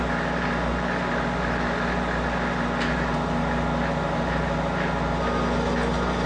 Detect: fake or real real